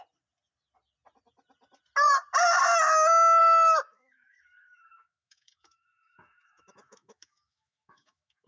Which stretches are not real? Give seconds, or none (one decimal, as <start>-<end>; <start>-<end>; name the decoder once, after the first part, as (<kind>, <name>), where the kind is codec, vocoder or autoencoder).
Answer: 3.4-8.5 (autoencoder, DAC-VAE)